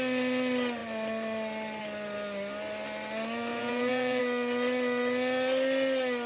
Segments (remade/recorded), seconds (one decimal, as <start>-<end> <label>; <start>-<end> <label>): 0.0-3.5 recorded; 3.5-4.2 remade; 4.2-6.3 recorded